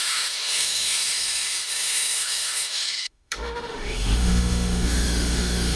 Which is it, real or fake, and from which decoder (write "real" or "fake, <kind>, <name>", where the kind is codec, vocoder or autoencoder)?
fake, autoencoder, DAC-VAE